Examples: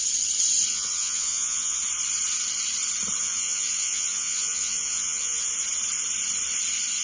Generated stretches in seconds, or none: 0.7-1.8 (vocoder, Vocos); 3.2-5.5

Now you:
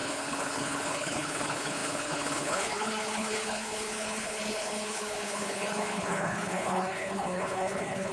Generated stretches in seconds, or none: 0.0-8.1 (codec, HILCodec)

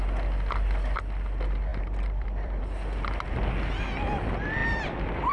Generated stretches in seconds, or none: 1.7-2.6 (vocoder, BigVGAN v2); 4.6-5.3

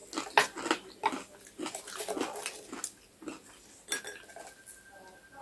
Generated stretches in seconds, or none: none

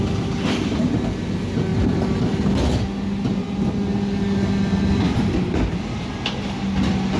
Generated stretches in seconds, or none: none

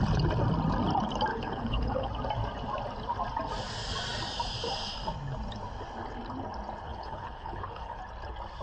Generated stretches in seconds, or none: 1.3-2.1 (codec, HILCodec); 6.9-8.0

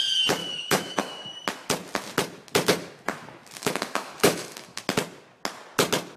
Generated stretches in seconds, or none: 0.4-1.3 (autoencoder, DAC-VAE); 3.6-4.8